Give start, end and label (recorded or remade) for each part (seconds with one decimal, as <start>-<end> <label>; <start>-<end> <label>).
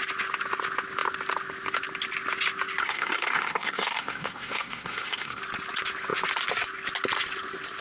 0.0-2.8 recorded; 2.8-5.4 remade; 5.4-7.8 recorded